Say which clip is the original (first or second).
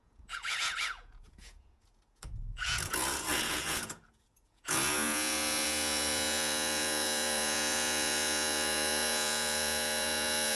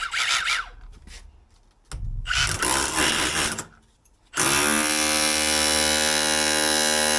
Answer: second